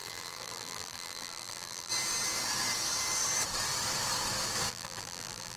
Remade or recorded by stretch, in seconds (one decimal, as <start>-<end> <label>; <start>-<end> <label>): 0.0-1.9 remade; 1.9-4.7 recorded; 4.7-5.6 remade

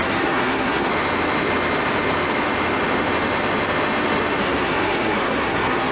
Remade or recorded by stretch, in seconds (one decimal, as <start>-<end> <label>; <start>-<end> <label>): 0.0-0.9 remade; 0.9-4.4 recorded; 4.4-5.9 remade